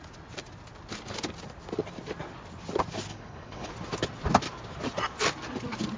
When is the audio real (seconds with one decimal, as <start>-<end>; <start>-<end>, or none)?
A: 0.0-3.1; 3.7-6.0